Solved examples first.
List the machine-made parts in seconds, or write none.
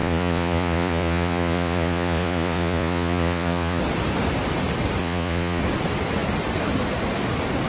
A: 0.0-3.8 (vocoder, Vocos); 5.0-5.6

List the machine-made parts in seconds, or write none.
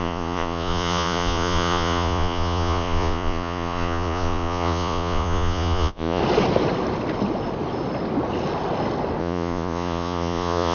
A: 0.0-6.2 (vocoder, Vocos); 9.2-10.7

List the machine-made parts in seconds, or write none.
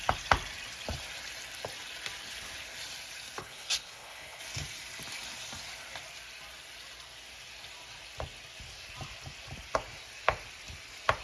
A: 3.4-4.4 (codec, HILCodec)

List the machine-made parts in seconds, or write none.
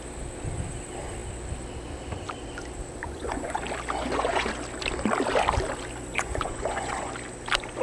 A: 3.0-3.6 (vocoder, Vocos); 4.0-4.5; 6.1-7.1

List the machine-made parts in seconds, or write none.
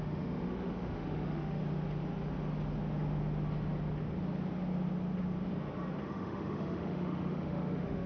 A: 0.0-1.6 (autoencoder, DAC-VAE); 6.0-8.1